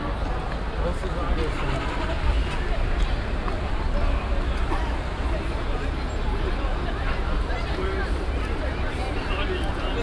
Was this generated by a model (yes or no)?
no